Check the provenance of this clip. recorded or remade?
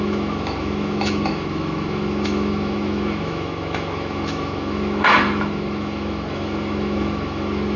remade